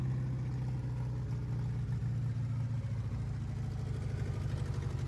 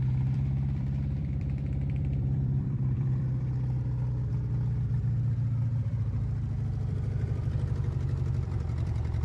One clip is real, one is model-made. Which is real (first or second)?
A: first